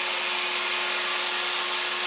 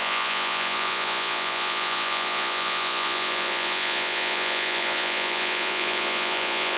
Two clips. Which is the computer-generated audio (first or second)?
second